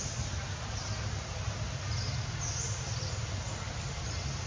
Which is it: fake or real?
real